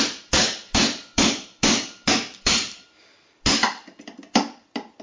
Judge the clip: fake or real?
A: fake